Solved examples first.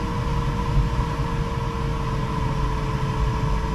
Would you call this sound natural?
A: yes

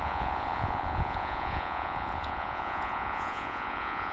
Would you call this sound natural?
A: no